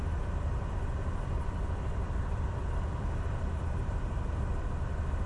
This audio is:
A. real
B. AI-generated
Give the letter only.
A